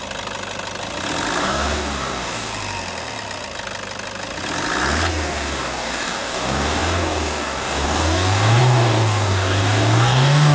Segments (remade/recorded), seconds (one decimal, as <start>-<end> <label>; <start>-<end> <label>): 0.0-1.4 recorded; 1.4-2.5 remade; 2.5-5.1 recorded; 5.1-10.5 remade